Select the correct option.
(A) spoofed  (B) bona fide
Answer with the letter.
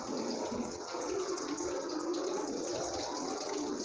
A